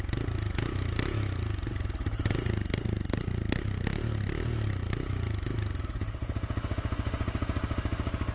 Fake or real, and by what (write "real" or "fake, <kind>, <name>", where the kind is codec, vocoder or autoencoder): real